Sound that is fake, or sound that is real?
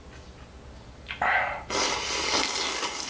real